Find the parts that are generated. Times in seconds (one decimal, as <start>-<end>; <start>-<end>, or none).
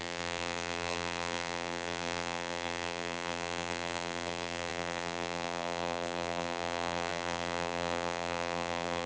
0.0-9.1